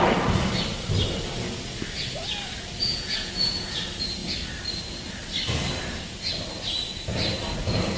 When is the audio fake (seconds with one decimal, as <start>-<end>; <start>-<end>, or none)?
2.8-3.8